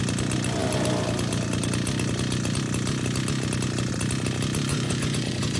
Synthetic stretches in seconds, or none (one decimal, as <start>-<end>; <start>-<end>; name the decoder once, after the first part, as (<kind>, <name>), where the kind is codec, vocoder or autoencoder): 4.7-5.6 (vocoder, Vocos)